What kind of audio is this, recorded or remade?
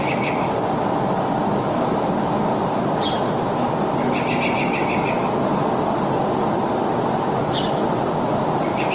recorded